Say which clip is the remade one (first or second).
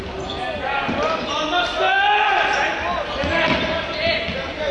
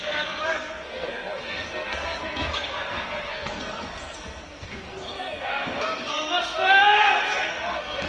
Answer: second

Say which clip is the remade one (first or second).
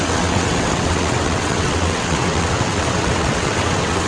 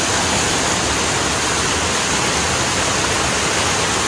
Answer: first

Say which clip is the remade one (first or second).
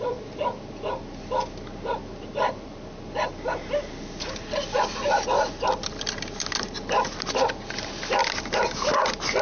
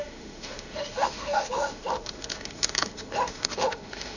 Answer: second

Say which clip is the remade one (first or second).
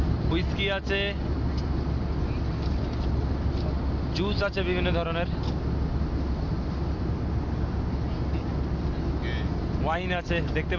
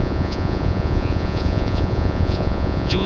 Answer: second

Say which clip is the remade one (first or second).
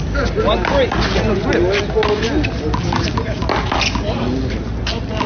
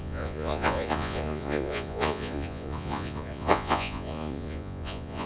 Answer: second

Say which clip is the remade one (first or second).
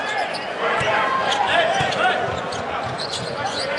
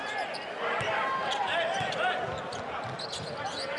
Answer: first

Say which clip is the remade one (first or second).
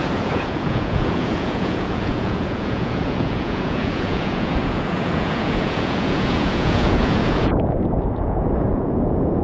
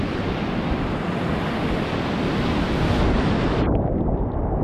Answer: first